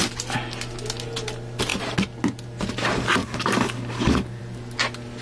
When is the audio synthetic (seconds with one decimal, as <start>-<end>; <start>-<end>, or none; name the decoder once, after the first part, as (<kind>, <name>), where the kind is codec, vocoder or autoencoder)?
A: 3.2-4.4 (codec, DAC)